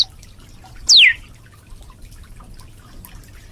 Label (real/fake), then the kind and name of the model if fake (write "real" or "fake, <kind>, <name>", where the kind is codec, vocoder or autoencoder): real